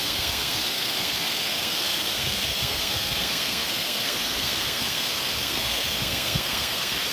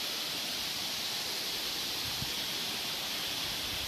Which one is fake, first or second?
first